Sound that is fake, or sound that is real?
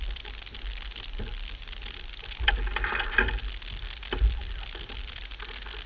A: real